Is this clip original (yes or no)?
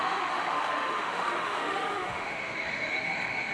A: no